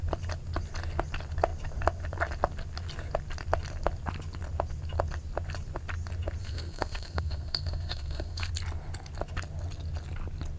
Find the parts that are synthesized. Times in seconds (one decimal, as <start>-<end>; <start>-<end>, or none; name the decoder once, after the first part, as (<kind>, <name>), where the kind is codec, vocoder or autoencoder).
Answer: 6.4-8.5 (codec, SNAC)